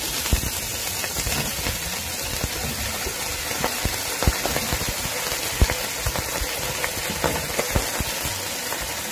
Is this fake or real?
real